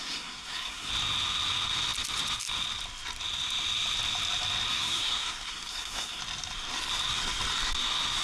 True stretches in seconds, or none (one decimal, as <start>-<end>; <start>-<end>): 0.9-4.7; 6.2-8.2